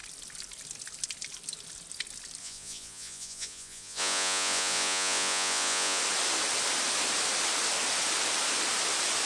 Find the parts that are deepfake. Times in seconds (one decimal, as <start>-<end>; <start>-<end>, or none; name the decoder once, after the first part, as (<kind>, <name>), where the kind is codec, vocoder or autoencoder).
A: 2.4-6.0 (vocoder, Vocos)